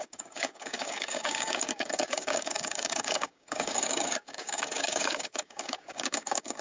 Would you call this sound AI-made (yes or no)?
yes